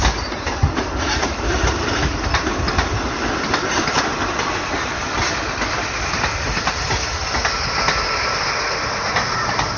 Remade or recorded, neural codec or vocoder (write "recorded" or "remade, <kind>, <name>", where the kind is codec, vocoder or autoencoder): recorded